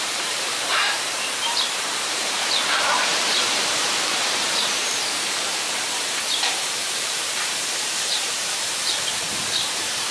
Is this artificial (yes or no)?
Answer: yes